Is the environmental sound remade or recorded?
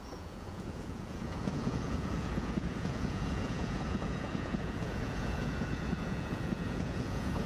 remade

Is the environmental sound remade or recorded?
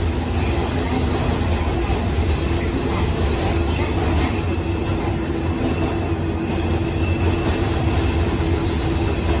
recorded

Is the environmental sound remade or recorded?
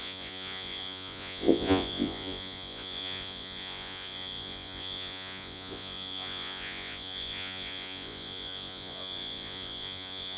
remade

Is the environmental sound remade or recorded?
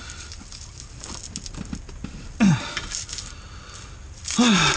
recorded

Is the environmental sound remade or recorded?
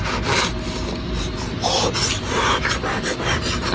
recorded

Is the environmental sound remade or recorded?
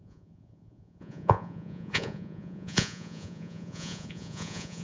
remade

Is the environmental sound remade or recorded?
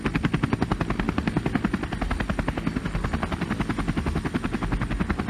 recorded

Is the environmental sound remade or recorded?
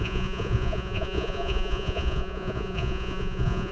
remade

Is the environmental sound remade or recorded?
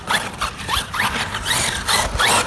recorded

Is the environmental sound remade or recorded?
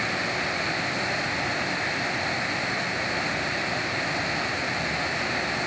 recorded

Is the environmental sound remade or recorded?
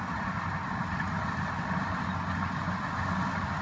recorded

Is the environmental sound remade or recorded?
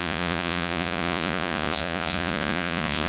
remade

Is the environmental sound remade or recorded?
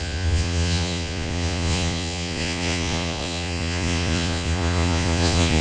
remade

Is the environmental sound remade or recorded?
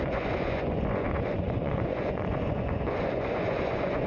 remade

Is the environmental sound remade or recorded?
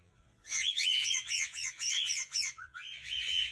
remade